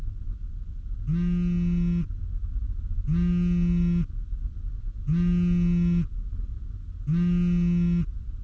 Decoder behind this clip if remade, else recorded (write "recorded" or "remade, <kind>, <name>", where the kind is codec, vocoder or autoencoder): recorded